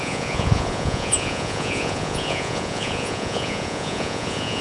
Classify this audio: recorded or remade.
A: remade